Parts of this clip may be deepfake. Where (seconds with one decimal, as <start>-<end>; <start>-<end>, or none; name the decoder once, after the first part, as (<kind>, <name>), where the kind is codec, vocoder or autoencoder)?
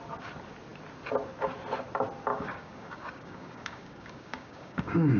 2.3-5.2 (codec, DAC)